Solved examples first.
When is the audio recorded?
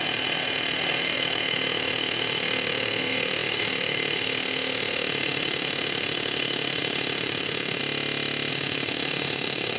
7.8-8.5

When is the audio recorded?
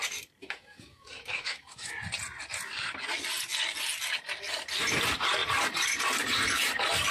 0.0-0.4; 1.9-7.1